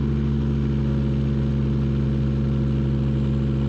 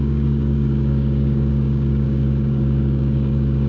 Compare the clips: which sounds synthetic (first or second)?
second